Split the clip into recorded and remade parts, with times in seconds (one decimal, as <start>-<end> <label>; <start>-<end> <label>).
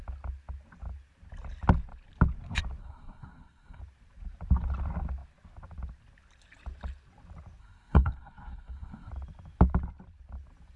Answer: 0.0-2.8 recorded; 2.8-3.8 remade; 3.8-7.6 recorded; 7.6-9.1 remade; 9.1-10.8 recorded